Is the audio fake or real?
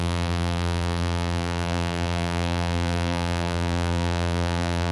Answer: fake